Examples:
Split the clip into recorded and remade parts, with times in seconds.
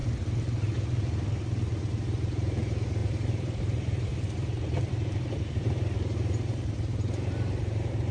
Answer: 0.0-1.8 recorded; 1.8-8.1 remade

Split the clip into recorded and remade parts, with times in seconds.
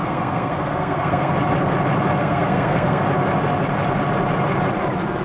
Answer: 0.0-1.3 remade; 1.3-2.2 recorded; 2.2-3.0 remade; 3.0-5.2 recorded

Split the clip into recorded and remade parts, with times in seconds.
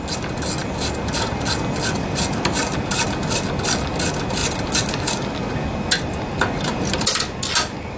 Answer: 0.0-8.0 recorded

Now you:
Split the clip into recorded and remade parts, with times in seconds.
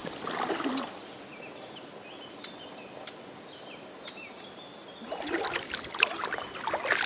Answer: 0.0-7.1 recorded